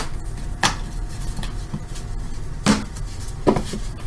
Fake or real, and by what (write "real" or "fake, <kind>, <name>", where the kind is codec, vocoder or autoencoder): real